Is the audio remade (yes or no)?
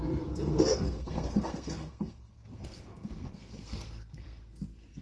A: yes